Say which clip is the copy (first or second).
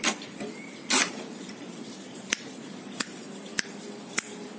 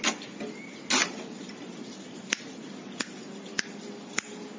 first